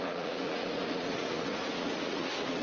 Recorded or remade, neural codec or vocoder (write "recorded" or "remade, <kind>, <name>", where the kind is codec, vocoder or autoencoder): remade, vocoder, Vocos